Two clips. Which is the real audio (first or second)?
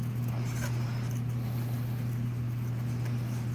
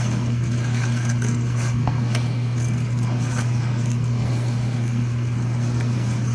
first